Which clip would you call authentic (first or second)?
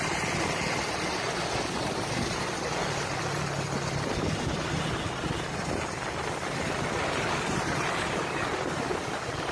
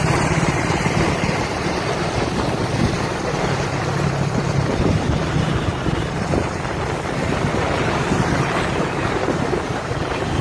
first